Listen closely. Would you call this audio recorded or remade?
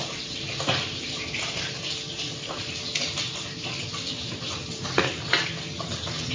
recorded